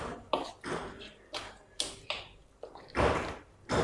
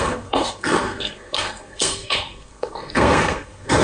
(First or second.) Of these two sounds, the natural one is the first